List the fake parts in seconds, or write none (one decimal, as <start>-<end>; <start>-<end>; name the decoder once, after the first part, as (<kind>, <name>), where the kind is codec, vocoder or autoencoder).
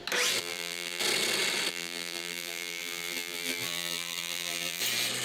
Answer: 0.4-1.0 (vocoder, BigVGAN v2); 1.7-4.8